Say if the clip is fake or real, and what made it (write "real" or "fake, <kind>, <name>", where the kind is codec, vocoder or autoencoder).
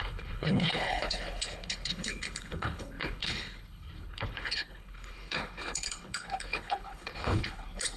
fake, codec, HILCodec